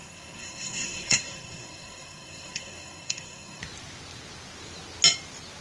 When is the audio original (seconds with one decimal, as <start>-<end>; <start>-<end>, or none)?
3.6-5.6

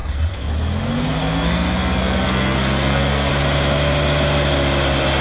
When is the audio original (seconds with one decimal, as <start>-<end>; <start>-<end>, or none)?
0.5-1.2; 3.3-5.2